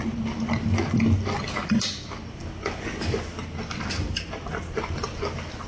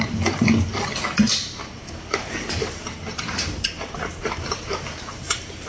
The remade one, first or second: second